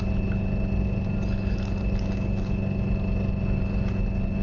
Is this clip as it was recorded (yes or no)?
yes